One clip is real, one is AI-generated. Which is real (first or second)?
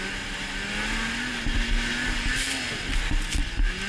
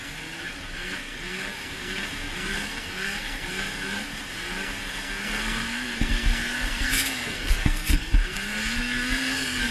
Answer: first